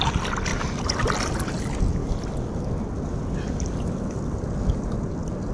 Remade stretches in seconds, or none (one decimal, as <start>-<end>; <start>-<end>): none